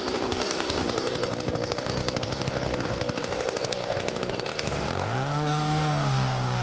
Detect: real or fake fake